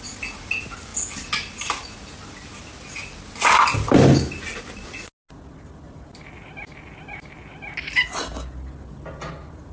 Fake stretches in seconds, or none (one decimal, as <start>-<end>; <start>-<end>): none